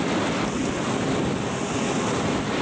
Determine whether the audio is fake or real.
real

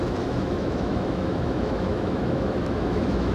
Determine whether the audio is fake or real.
fake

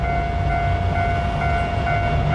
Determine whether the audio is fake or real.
real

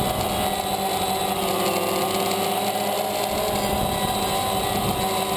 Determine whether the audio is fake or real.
real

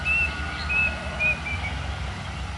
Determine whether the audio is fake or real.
real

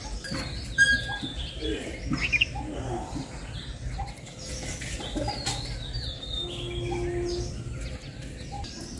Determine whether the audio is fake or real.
real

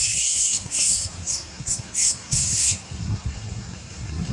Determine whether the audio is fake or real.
fake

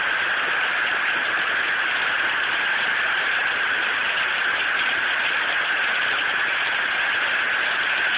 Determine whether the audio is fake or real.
real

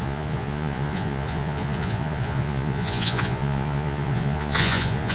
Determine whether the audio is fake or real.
fake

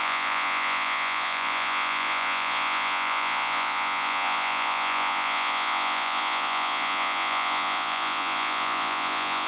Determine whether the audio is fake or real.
fake